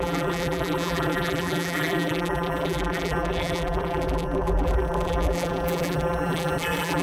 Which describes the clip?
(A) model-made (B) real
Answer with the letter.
A